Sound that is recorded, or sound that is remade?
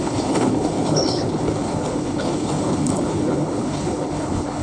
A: remade